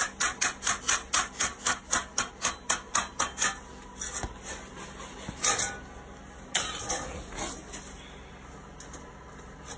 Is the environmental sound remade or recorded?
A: recorded